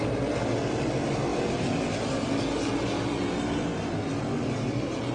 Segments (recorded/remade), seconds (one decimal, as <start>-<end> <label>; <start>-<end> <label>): 0.0-5.1 recorded